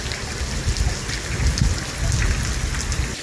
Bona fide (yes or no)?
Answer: yes